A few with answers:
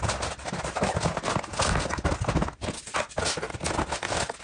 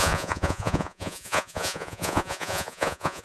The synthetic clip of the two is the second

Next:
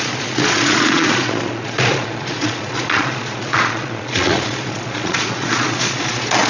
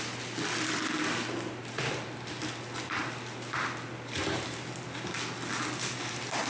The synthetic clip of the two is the first